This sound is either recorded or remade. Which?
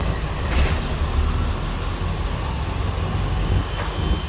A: recorded